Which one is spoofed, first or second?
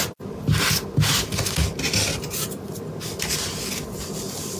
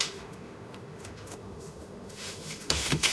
second